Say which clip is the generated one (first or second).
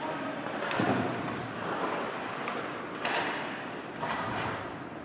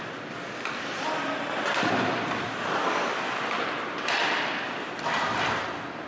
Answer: first